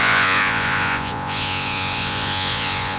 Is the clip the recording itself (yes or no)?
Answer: no